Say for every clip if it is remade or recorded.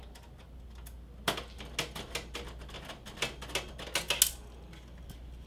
recorded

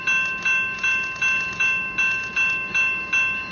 recorded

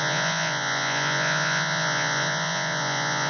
remade